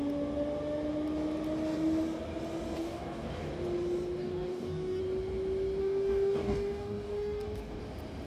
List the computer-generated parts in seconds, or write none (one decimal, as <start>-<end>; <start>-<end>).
2.8-3.5; 4.2-5.0; 5.8-7.8